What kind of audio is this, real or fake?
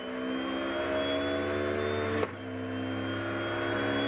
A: real